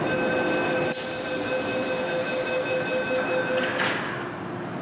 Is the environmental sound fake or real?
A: real